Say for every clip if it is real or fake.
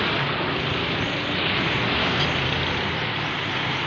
real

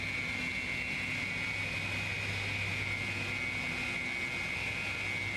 real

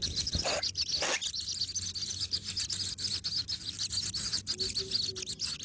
real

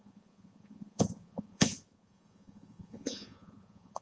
fake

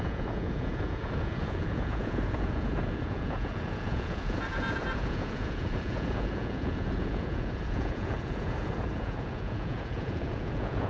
fake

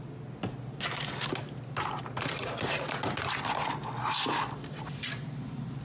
real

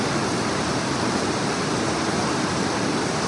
real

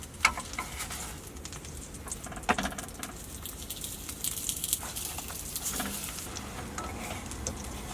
real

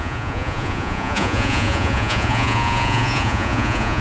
fake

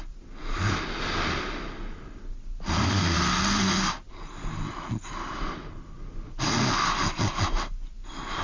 real